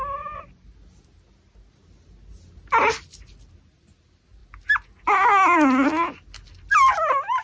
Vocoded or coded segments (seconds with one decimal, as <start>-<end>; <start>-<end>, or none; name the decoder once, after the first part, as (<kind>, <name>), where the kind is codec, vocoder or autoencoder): none